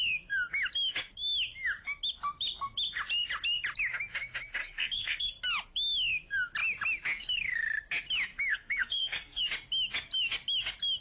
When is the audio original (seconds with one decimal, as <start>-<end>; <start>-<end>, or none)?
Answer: 0.0-4.6; 5.3-8.5; 9.4-11.0